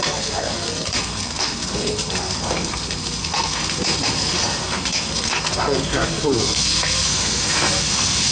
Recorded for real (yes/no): no